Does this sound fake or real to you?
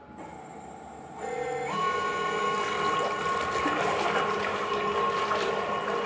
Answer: real